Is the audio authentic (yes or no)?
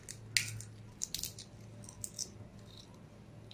yes